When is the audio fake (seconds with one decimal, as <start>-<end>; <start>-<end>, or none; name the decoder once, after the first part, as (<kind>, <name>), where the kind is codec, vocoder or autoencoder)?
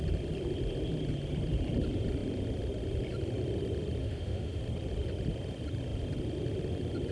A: 4.0-4.6 (autoencoder, DAC-VAE)